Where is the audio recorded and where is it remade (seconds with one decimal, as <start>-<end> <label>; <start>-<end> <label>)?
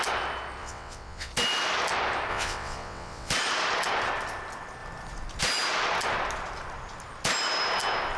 0.0-0.6 recorded; 0.6-1.3 remade; 1.3-2.3 recorded; 2.3-3.3 remade; 3.3-8.2 recorded